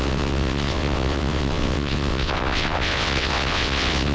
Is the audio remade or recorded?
remade